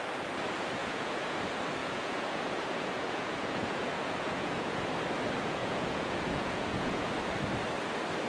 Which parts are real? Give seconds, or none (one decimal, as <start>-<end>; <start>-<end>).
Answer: 0.0-0.8; 1.4-1.8; 4.8-5.6; 7.1-8.3